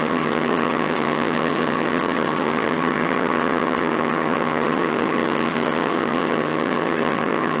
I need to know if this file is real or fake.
fake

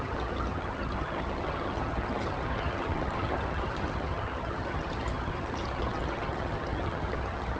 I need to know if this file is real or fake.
fake